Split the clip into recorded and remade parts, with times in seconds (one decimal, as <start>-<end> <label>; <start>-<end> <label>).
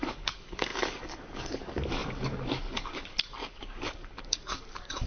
0.0-5.1 remade